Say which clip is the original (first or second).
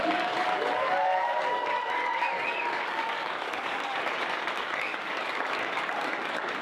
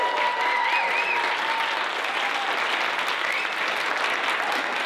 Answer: second